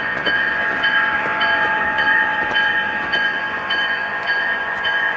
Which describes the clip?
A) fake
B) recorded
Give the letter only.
A